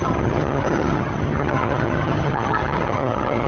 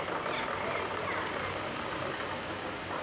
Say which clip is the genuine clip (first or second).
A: second